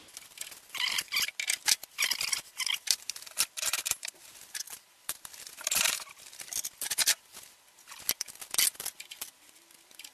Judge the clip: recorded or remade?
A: recorded